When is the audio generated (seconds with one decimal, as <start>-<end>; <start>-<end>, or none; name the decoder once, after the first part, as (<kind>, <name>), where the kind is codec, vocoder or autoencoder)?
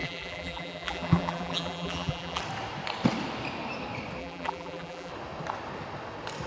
0.0-2.4 (vocoder, BigVGAN v2); 4.2-5.1